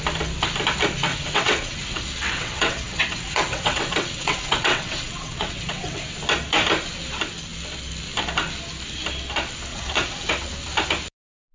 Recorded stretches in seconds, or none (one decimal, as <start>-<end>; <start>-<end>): 0.0-1.1; 6.0-9.7; 10.5-11.5